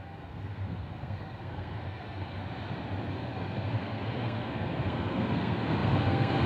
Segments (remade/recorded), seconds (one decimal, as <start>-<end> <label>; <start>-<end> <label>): 0.0-2.4 remade; 2.4-3.1 recorded; 3.1-6.5 remade